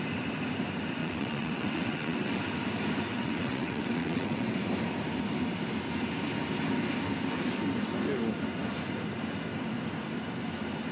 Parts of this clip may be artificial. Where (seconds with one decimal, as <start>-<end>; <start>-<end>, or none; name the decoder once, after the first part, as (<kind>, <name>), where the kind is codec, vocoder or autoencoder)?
1.0-2.4 (vocoder, WaveNeXt); 3.1-4.6